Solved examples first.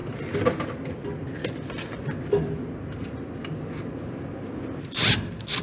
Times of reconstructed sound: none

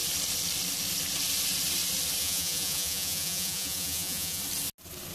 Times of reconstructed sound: 2.2-4.4

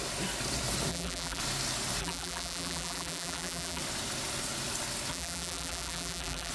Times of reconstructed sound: 0.9-1.4; 2.0-3.8; 5.1-6.5

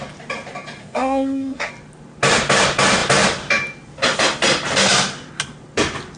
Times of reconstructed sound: 0.8-1.7

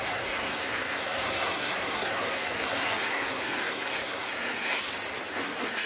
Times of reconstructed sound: 0.0-4.8; 5.3-5.9

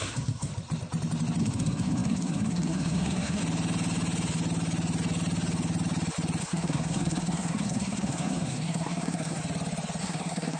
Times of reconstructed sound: 0.0-0.5; 1.4-3.4; 6.4-9.4; 10.0-10.6